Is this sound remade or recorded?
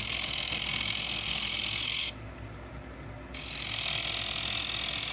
recorded